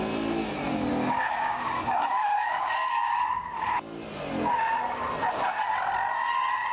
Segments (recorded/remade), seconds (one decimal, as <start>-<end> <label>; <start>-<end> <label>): 0.0-0.9 recorded; 0.9-1.7 remade; 1.7-2.3 recorded; 2.3-3.2 remade; 3.2-6.7 recorded